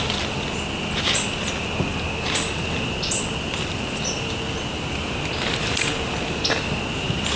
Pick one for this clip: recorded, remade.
recorded